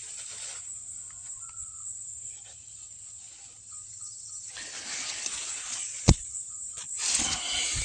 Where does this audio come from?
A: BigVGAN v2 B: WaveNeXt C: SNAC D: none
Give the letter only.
D